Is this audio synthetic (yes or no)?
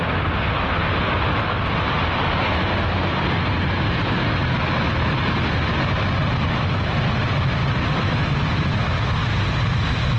no